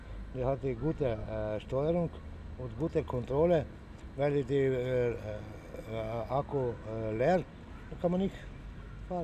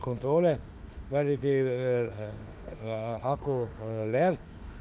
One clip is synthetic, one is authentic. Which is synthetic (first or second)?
second